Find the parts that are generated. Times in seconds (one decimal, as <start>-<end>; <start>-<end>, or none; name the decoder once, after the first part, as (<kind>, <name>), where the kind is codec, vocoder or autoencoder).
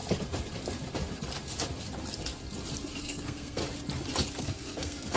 3.0-3.6 (codec, SNAC); 4.4-5.2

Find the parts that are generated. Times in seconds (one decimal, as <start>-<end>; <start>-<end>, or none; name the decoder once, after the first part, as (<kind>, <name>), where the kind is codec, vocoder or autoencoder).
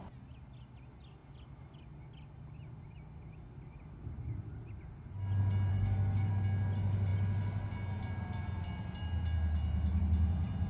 5.7-6.3 (codec, SNAC)